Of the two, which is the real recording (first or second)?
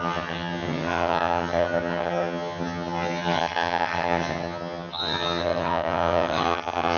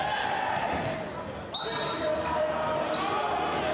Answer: second